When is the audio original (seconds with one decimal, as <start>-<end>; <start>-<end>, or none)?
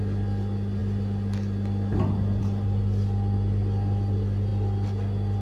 0.0-5.4